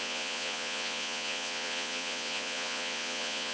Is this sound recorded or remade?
remade